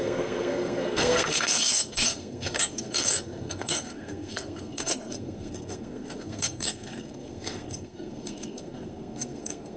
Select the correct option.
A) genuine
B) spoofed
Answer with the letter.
B